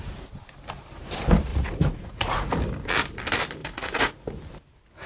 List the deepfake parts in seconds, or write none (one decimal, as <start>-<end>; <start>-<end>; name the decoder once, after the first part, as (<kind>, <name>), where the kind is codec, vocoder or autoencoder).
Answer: 1.5-2.5 (vocoder, Vocos); 3.6-4.1